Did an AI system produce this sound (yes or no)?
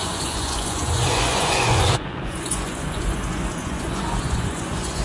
yes